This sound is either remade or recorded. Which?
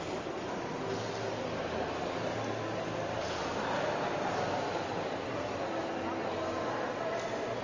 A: recorded